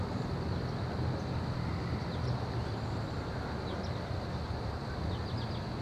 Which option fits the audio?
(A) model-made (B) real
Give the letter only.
B